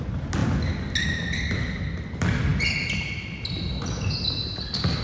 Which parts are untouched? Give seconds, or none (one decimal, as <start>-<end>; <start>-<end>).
0.0-5.0